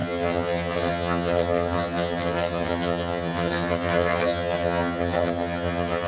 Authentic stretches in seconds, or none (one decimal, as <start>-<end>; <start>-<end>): none